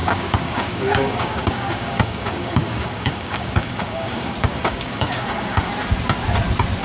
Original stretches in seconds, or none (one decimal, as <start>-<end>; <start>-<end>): 5.7-6.8